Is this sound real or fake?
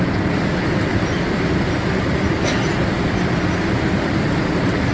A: real